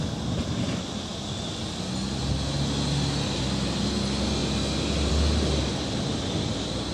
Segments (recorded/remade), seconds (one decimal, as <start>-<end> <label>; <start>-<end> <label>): 0.0-6.9 recorded